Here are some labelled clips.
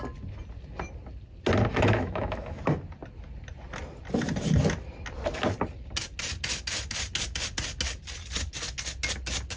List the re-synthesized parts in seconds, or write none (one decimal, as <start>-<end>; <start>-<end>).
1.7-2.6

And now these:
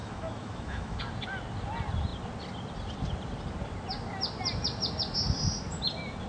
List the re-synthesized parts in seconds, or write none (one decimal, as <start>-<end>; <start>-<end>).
0.0-1.0

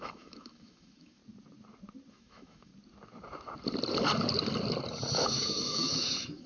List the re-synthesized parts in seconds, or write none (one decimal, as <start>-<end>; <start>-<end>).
0.0-1.2; 2.1-2.7; 5.1-6.5

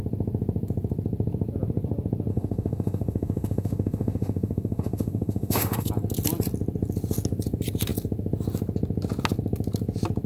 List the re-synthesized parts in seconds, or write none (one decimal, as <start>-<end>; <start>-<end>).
2.3-5.9

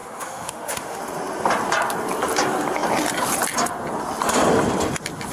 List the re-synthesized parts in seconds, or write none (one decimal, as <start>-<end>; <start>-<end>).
0.0-1.0

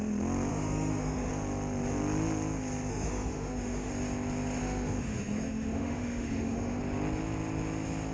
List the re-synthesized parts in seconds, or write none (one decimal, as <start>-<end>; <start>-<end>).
0.5-1.3; 2.9-3.9; 4.6-6.8

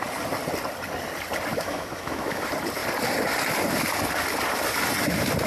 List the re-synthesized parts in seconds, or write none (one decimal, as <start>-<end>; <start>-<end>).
1.5-2.4

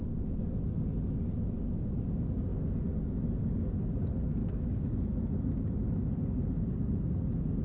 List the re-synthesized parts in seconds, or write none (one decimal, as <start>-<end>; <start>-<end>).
4.4-5.1